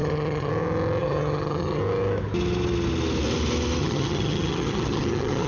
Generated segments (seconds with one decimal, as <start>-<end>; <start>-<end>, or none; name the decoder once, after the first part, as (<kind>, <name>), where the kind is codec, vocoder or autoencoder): 0.0-0.5 (vocoder, HiFi-GAN); 1.0-1.8; 3.8-5.5